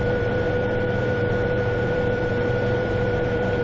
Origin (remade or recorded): remade